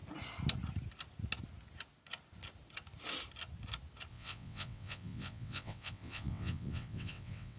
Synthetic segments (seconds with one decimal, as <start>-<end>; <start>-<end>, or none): 4.1-7.6